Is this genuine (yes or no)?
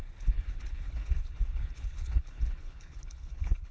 no